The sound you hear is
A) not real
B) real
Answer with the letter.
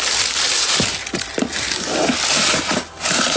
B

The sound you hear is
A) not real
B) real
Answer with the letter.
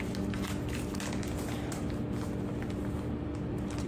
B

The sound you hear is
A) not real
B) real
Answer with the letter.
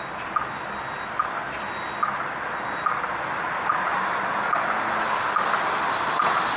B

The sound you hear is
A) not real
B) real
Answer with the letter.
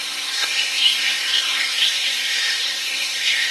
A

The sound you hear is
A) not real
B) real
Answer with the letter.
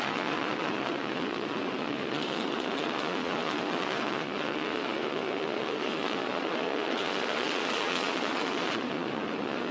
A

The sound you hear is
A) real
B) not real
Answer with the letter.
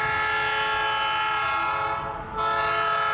A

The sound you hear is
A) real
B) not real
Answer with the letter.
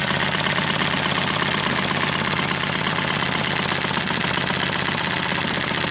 A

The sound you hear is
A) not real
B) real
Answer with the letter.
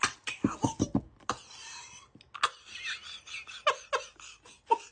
B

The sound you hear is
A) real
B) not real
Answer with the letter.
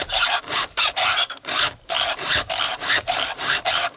B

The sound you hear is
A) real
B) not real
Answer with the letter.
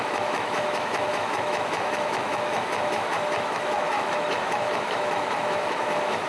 B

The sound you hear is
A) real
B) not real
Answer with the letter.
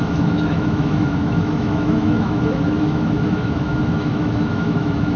B